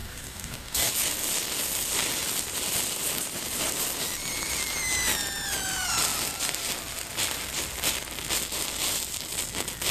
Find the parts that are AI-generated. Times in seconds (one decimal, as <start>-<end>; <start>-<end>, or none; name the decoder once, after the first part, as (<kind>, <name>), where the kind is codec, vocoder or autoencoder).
0.0-0.9 (codec, DAC)